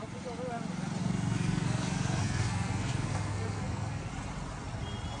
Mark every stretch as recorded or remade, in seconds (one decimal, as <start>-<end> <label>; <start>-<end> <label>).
0.0-1.0 recorded; 1.0-4.1 remade; 4.1-5.2 recorded